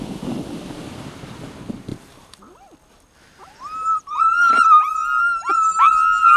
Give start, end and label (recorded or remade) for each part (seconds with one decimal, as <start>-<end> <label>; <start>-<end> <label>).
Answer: 0.0-1.9 recorded; 1.9-4.2 remade; 4.2-6.4 recorded